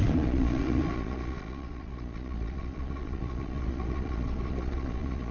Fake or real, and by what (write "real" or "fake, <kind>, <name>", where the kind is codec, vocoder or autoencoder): fake, vocoder, Vocos